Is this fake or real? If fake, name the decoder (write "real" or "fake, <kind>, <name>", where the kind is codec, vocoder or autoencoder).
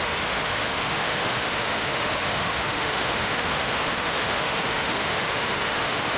fake, autoencoder, DAC-VAE